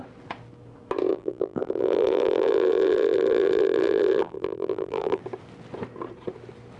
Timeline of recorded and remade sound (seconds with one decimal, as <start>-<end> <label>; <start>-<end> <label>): 0.0-1.1 recorded; 1.1-5.2 remade; 5.2-6.8 recorded